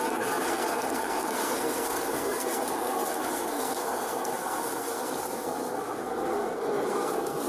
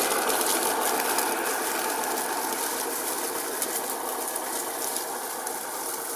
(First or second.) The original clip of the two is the second